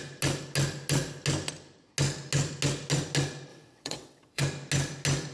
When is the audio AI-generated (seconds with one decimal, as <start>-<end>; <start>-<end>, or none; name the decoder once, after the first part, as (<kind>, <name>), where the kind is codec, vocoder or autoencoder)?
3.5-4.4 (vocoder, WaveNeXt)